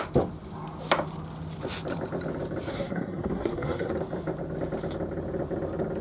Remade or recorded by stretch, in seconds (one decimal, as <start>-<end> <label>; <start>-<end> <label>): 0.0-2.7 recorded; 2.7-3.9 remade; 3.9-6.0 recorded